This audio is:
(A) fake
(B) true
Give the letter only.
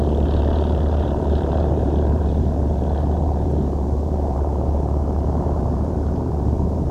A